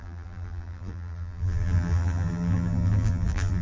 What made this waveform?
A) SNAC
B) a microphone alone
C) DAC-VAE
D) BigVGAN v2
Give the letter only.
D